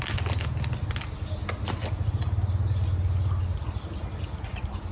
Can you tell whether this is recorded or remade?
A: recorded